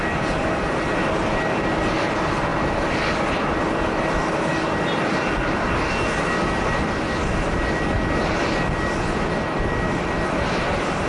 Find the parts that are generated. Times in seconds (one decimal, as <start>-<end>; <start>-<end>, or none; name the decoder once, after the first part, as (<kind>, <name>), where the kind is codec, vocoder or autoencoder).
none